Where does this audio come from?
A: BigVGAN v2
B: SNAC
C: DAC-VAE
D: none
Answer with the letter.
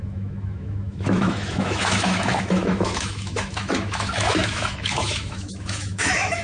C